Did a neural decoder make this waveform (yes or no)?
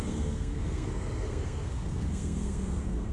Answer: yes